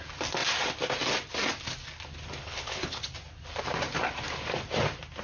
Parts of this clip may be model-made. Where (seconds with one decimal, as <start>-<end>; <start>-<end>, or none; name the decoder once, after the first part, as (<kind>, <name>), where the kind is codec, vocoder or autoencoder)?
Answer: 2.4-3.0 (codec, HILCodec)